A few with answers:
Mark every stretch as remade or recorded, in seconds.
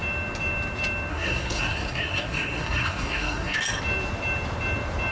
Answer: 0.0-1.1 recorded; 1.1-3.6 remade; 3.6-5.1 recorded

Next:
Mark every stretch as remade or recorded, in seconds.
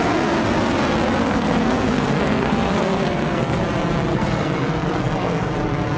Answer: 0.0-1.2 recorded; 1.2-3.6 remade; 3.6-4.1 recorded; 4.1-5.5 remade; 5.5-6.0 recorded